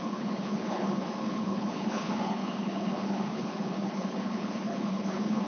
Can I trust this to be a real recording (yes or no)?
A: no